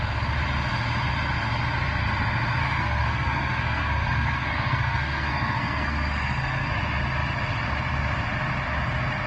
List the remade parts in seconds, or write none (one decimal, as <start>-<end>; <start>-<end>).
2.6-6.7